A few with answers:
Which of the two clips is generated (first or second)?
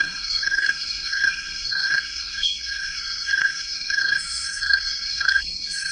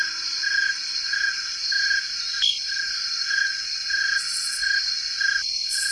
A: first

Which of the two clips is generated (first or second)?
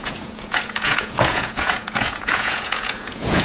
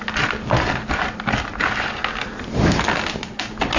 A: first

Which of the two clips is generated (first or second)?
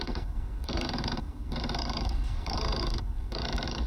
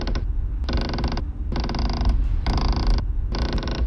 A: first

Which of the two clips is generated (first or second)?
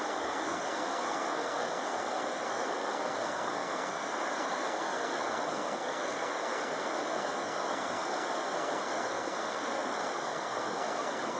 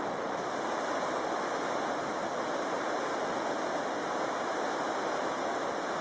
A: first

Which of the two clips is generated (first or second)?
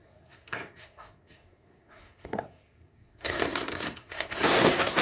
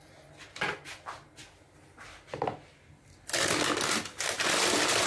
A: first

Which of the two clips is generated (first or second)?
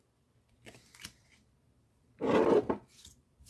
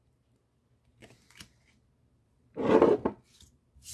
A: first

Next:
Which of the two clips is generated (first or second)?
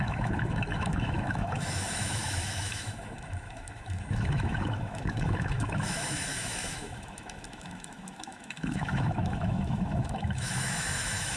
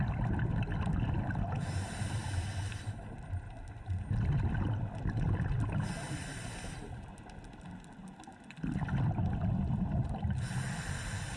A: first